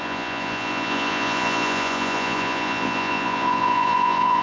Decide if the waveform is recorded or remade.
remade